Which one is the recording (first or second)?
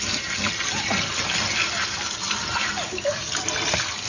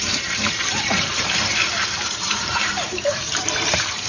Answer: first